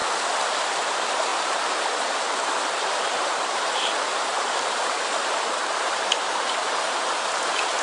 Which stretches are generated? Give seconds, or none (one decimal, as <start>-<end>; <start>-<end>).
0.7-7.8